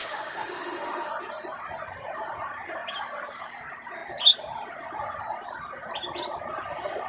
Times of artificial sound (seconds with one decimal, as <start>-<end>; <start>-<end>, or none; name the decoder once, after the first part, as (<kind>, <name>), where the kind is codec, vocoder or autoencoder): 0.0-1.1 (autoencoder, DAC-VAE)